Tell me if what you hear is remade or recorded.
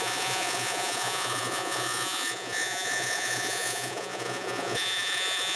remade